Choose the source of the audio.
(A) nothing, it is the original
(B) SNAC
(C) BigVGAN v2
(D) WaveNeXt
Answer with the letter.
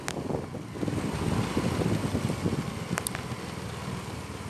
A